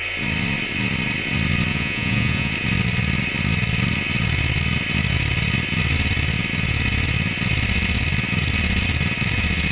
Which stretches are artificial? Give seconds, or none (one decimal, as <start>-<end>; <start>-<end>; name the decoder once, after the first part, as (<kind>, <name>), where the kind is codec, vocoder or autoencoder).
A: 1.7-2.5 (vocoder, Vocos)